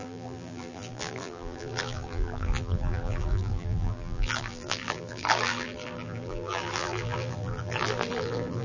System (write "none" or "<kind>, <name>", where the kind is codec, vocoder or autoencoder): vocoder, BigVGAN v2